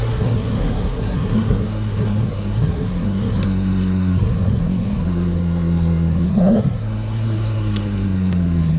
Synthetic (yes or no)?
yes